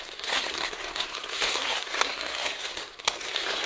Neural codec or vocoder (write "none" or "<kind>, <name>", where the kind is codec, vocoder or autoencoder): codec, SNAC